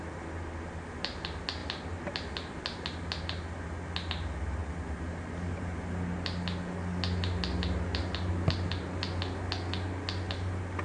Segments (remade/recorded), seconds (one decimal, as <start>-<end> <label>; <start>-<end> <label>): 0.0-10.8 recorded

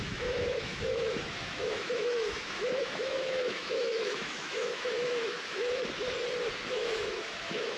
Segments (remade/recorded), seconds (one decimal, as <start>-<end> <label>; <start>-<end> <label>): 0.0-5.8 remade; 5.8-6.7 recorded; 6.7-7.8 remade

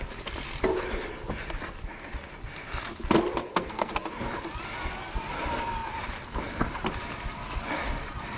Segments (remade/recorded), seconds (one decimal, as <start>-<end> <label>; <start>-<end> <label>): 0.0-3.4 recorded; 3.4-3.9 remade; 3.9-8.4 recorded

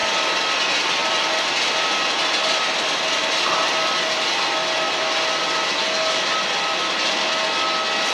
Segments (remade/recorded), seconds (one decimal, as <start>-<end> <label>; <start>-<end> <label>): 0.0-1.0 recorded; 1.0-4.4 remade; 4.4-8.1 recorded

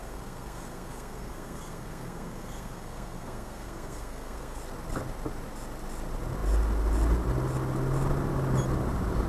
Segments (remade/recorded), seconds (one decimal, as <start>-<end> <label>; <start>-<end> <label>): 0.0-4.6 remade; 4.6-9.3 recorded

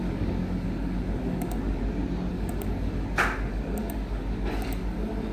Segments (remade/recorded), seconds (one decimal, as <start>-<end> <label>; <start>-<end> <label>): 0.0-1.8 remade; 1.8-2.3 recorded; 2.3-5.3 remade

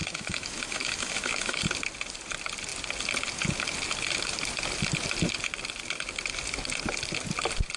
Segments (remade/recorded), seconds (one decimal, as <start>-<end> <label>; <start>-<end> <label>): 0.0-1.6 remade; 1.6-7.8 recorded